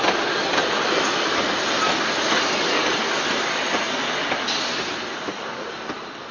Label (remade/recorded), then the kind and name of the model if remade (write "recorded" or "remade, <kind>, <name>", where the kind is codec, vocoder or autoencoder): recorded